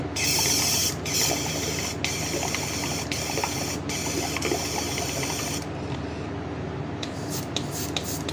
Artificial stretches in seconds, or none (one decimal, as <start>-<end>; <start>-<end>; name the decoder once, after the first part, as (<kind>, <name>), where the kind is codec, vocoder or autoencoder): none